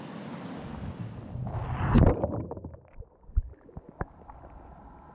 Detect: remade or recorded recorded